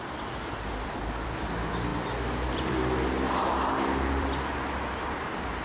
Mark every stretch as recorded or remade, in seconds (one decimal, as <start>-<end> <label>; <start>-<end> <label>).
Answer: 0.0-1.9 remade; 1.9-2.5 recorded; 2.5-5.6 remade